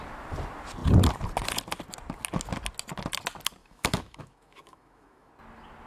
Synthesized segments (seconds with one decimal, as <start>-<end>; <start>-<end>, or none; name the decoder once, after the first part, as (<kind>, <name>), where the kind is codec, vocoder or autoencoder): 3.6-5.3 (autoencoder, DAC-VAE)